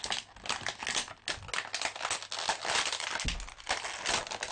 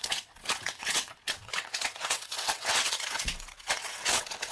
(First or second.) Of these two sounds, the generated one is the second